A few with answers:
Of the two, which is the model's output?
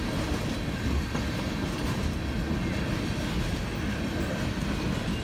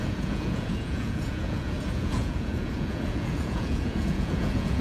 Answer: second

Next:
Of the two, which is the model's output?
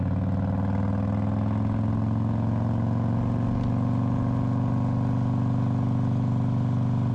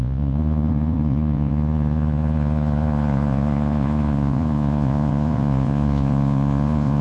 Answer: second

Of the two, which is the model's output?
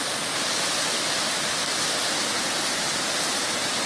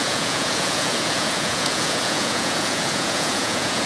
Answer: second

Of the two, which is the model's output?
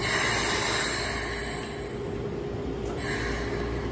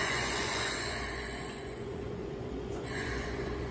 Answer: second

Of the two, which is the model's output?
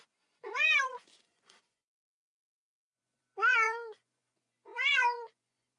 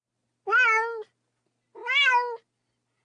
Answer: first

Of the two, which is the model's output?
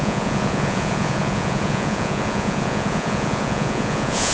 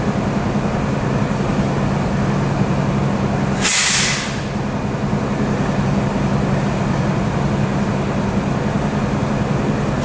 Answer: first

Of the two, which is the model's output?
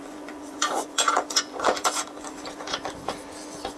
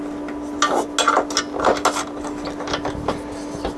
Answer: first